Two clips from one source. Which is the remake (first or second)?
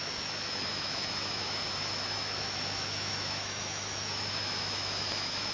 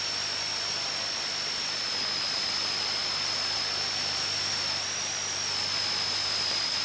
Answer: first